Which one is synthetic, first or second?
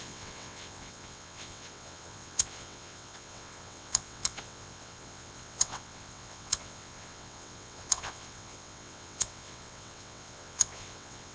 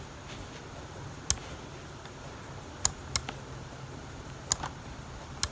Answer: first